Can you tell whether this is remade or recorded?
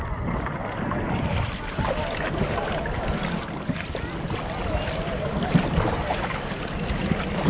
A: recorded